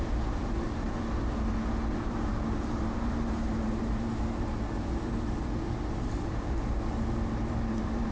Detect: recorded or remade remade